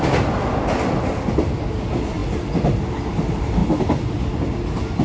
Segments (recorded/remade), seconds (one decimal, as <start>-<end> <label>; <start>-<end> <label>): 0.0-5.0 recorded